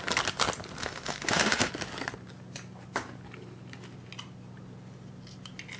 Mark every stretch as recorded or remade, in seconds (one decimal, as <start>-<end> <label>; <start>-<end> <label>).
0.0-0.8 recorded; 0.8-1.7 remade; 1.7-5.8 recorded